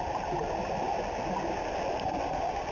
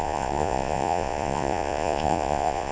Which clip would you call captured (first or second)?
first